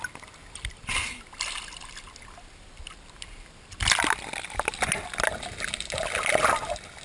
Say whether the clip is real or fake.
real